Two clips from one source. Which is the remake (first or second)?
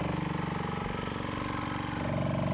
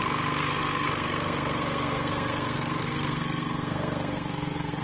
second